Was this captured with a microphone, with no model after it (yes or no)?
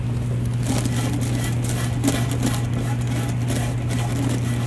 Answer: yes